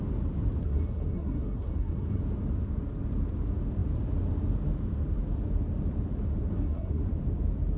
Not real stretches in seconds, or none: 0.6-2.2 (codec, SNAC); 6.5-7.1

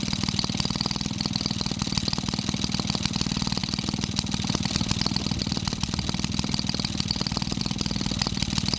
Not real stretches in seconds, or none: none

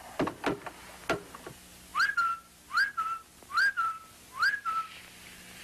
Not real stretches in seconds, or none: none

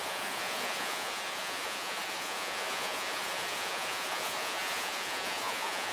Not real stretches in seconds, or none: 0.0-5.9 (vocoder, Vocos)

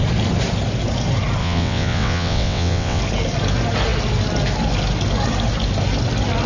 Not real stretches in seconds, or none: 1.4-3.0 (vocoder, WaveNeXt)

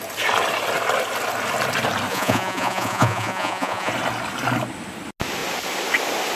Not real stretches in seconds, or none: 2.1-3.9 (vocoder, Vocos)

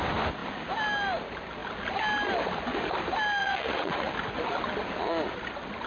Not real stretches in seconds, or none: 3.4-4.1 (vocoder, Vocos)

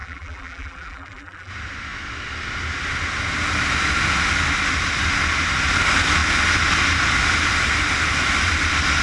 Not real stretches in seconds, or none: 0.0-1.5 (vocoder, BigVGAN v2)